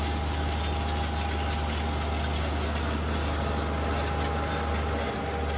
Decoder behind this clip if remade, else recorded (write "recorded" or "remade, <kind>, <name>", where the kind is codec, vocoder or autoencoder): recorded